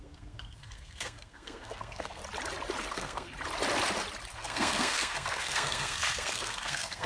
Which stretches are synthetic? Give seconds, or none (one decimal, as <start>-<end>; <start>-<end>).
0.0-2.2; 2.9-3.3; 4.3-7.1